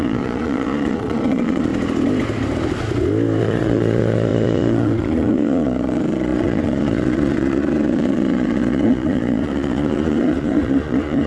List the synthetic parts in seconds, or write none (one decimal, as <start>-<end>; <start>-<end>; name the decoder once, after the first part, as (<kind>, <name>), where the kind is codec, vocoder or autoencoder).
0.0-1.7 (vocoder, Vocos); 3.4-11.3